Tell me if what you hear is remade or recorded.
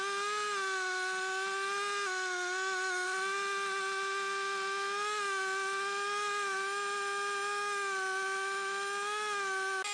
recorded